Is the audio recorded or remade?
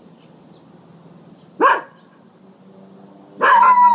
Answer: recorded